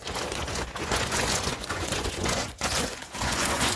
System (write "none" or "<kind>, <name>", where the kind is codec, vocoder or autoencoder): vocoder, Vocos